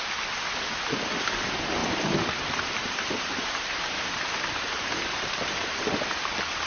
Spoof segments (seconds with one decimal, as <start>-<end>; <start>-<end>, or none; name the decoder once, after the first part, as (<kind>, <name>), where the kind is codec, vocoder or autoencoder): 1.8-5.8 (vocoder, BigVGAN v2)